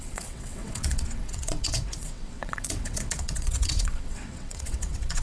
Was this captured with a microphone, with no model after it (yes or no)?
no